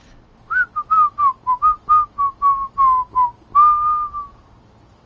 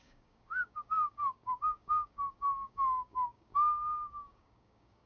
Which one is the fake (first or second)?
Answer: second